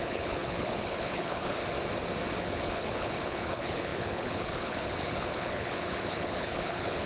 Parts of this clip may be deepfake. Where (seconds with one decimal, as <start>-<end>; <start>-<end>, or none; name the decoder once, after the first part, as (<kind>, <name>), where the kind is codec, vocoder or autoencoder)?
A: 0.0-1.6 (codec, HILCodec); 2.4-7.0